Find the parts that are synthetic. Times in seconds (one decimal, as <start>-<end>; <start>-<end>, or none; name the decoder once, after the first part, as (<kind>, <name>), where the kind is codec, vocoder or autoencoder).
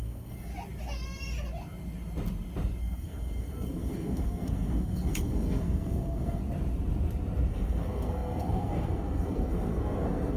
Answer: 0.0-0.5 (codec, SNAC); 2.8-6.4; 7.5-10.4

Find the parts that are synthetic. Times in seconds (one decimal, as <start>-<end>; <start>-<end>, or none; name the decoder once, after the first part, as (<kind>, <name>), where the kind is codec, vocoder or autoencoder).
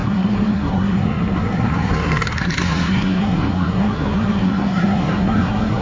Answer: 0.0-5.8 (codec, SNAC)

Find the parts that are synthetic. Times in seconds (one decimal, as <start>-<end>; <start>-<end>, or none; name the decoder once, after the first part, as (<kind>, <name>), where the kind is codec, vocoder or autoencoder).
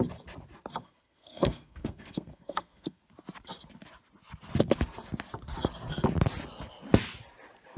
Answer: 0.8-3.0 (codec, SNAC)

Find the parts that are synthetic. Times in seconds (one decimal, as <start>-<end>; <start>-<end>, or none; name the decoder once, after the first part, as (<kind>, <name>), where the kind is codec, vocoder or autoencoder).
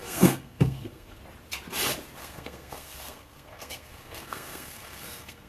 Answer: 0.0-1.2 (codec, SNAC); 2.2-5.5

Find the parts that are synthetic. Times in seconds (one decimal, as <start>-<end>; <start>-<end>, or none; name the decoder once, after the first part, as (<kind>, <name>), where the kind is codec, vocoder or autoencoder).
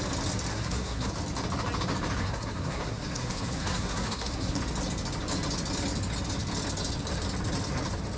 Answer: 0.5-1.1 (codec, SNAC); 2.2-4.6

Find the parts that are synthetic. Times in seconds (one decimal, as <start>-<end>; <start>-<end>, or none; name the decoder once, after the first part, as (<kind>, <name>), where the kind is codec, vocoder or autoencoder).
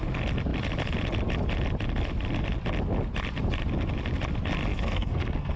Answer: 4.7-5.6 (codec, SNAC)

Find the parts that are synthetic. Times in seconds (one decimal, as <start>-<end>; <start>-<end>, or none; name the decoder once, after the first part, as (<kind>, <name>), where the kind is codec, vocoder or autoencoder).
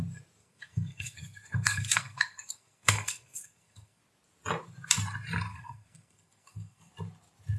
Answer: 0.4-4.0 (codec, SNAC); 5.5-6.9